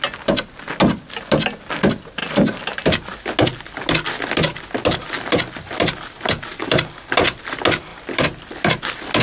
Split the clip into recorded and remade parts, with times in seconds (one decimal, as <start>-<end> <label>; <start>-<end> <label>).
0.0-7.9 recorded; 7.9-8.6 remade; 8.6-9.2 recorded